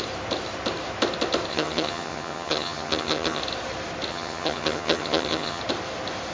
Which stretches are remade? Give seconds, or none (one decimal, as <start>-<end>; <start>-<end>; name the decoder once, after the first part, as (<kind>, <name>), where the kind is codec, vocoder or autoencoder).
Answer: 1.5-3.4 (vocoder, HiFi-GAN); 4.1-5.6